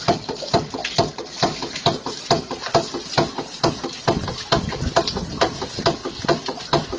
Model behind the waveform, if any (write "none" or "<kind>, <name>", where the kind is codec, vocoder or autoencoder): none